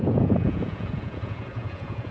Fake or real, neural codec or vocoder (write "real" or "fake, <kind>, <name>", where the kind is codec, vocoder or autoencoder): fake, vocoder, Vocos